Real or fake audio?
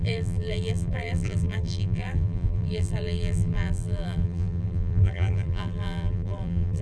fake